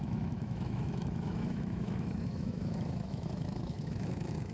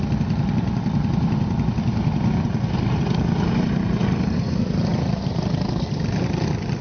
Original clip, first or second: second